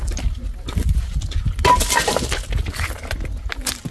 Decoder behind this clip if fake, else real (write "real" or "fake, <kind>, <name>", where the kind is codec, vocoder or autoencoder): real